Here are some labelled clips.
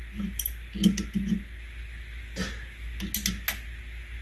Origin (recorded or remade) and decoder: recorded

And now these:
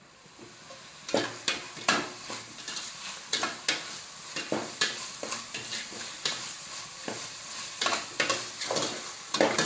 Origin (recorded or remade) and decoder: remade, vocoder, BigVGAN v2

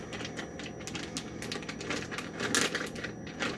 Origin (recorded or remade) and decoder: recorded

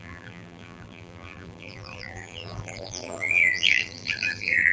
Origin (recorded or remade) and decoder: remade, vocoder, BigVGAN v2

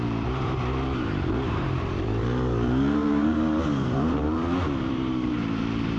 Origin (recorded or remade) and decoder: remade, vocoder, BigVGAN v2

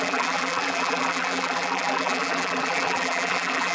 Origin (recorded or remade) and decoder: remade, vocoder, BigVGAN v2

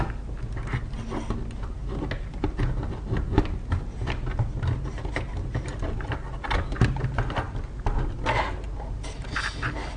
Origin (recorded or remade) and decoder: recorded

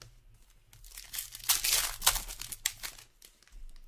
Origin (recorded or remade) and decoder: recorded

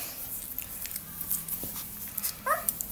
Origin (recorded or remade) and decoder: recorded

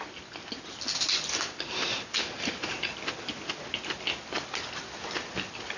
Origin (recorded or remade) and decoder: recorded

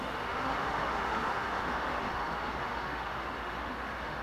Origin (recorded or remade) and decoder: remade, autoencoder, DAC-VAE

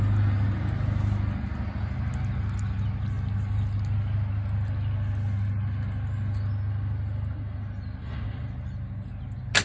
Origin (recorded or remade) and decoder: recorded